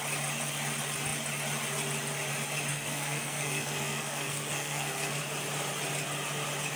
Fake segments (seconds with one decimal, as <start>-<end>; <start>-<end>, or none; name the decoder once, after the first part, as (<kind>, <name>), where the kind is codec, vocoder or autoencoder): 2.7-5.2 (codec, SNAC)